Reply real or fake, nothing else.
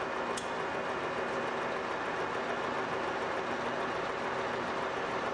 real